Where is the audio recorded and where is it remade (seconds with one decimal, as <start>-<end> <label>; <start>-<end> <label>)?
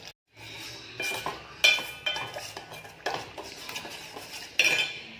0.0-5.2 recorded